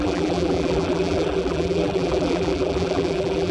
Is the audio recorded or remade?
remade